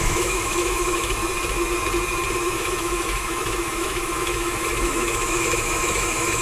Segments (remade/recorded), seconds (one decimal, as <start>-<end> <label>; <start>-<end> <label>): 0.0-1.2 remade; 1.2-2.3 recorded; 2.3-6.4 remade